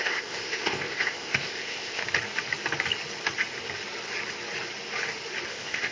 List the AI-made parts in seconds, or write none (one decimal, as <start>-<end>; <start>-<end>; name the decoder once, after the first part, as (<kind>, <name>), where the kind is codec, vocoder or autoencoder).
0.0-2.0 (codec, ZipCodec); 5.5-5.9

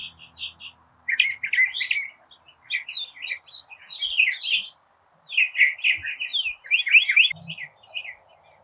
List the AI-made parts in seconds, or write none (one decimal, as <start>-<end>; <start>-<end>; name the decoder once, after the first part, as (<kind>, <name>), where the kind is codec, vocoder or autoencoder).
none

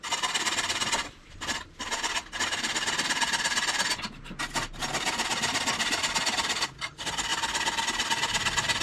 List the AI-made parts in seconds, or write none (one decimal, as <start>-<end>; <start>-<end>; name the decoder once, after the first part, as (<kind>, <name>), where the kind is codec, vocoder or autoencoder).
none

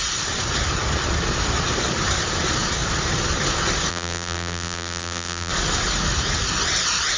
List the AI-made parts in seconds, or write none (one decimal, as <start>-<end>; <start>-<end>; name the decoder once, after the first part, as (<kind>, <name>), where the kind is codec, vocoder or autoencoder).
3.9-5.5 (vocoder, BigVGAN v2)

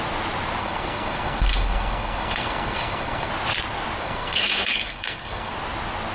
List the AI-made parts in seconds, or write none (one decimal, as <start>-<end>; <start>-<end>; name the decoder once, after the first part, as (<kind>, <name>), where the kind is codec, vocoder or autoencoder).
0.6-3.3 (codec, SNAC); 4.0-5.5

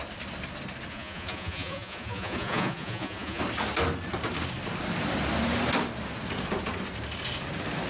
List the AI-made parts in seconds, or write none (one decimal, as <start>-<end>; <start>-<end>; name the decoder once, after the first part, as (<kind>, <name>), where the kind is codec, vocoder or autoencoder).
0.9-3.4 (vocoder, Vocos)

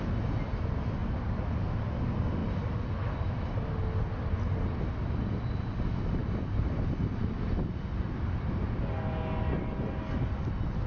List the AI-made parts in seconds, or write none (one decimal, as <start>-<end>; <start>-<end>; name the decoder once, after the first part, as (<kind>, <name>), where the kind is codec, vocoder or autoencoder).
1.0-1.5 (vocoder, BigVGAN v2); 6.2-7.5